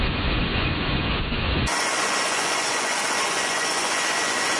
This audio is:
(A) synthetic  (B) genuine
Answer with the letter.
A